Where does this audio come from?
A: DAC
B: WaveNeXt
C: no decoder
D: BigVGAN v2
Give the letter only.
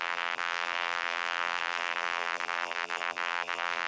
D